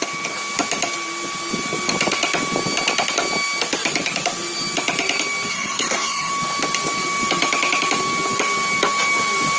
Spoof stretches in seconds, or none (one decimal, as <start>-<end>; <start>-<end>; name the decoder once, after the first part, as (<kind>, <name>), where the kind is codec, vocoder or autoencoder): 5.5-6.3 (codec, SNAC)

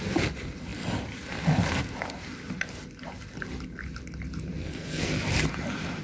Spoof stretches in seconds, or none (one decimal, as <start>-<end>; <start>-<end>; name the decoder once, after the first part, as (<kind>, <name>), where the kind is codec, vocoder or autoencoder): 4.6-5.1 (codec, SNAC)

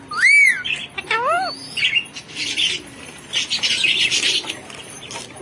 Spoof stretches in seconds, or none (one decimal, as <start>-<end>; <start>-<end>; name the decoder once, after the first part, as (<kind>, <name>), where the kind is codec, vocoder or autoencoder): none

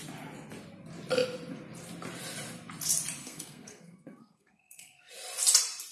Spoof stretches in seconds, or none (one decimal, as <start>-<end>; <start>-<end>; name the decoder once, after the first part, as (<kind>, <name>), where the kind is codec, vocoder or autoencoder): 3.2-5.1 (codec, SNAC)

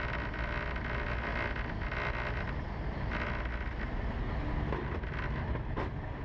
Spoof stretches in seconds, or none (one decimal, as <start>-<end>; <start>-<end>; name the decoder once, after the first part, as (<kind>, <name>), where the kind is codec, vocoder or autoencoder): none

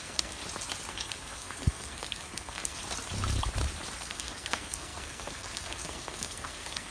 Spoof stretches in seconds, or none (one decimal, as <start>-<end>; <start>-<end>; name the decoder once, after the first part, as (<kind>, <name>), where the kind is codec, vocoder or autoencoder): 0.0-0.4 (codec, SNAC); 0.9-2.8; 4.0-6.9